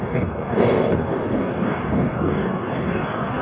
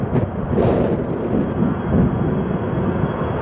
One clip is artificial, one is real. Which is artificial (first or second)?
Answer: first